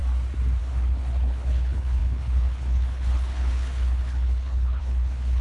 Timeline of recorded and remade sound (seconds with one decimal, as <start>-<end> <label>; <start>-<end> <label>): 0.0-0.6 recorded; 0.6-5.4 remade